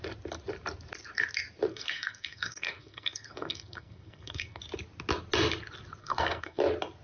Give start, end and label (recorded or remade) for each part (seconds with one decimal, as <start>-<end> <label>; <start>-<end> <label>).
0.0-1.7 recorded; 1.7-4.6 remade; 4.6-6.0 recorded; 6.0-6.6 remade; 6.6-7.0 recorded